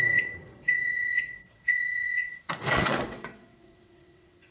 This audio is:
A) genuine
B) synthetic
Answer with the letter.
B